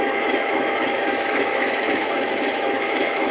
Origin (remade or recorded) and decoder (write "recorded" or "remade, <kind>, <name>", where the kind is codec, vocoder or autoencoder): remade, autoencoder, DAC-VAE